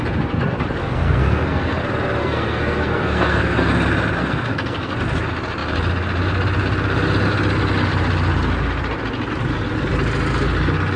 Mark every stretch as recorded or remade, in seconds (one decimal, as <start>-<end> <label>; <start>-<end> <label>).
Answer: 0.0-0.8 recorded; 0.8-1.8 remade; 1.8-2.2 recorded; 2.2-3.7 remade; 3.7-4.2 recorded; 4.2-4.9 remade; 4.9-11.0 recorded